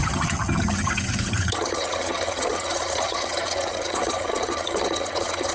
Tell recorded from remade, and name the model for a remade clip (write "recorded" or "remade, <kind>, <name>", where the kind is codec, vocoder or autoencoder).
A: remade, vocoder, HiFi-GAN